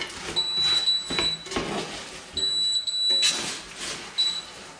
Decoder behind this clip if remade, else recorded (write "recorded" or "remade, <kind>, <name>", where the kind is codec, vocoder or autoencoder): recorded